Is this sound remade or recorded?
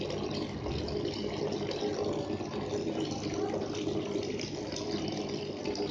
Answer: recorded